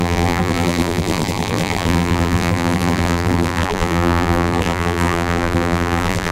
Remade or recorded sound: remade